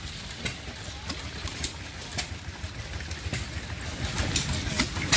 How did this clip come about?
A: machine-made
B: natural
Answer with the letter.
B